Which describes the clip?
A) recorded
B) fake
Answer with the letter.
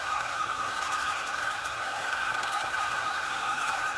B